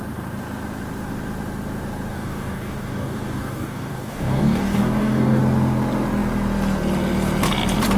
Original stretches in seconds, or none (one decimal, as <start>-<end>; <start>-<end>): 0.0-2.1; 5.4-8.0